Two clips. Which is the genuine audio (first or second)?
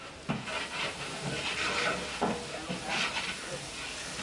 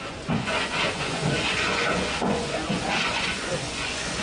first